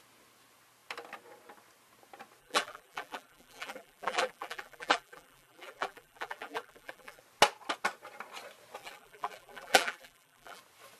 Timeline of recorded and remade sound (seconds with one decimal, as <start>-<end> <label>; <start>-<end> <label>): 0.0-2.4 recorded; 2.4-7.2 remade; 7.2-8.8 recorded; 8.8-10.6 remade; 10.6-11.0 recorded